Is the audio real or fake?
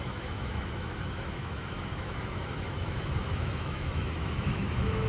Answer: fake